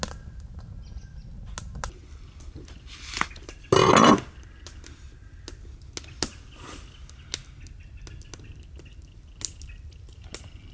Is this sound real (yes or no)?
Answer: yes